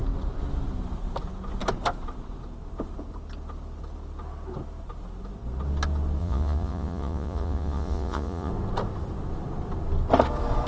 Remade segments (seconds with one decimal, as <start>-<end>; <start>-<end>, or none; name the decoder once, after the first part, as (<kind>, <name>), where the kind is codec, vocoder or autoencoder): 6.2-8.5 (vocoder, Vocos)